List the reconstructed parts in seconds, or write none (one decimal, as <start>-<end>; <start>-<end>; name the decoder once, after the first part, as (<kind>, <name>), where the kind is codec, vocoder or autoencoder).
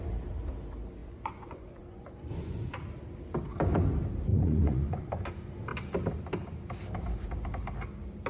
1.0-2.7 (vocoder, Vocos); 4.3-5.1